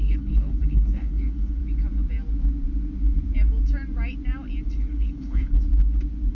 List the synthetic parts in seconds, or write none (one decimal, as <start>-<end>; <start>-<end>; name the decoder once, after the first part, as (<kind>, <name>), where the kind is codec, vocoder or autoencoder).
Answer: 0.0-1.6 (codec, HILCodec); 4.7-5.6